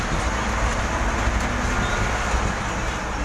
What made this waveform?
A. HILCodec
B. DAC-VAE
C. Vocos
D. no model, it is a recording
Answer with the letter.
D